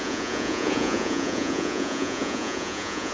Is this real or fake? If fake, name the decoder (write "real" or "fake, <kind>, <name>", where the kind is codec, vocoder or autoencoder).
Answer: fake, vocoder, Vocos